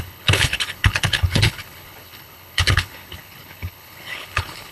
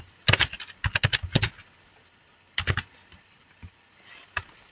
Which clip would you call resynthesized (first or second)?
first